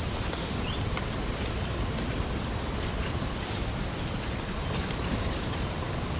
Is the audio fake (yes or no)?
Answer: no